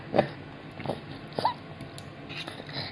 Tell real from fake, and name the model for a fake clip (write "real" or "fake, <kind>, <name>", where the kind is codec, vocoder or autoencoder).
real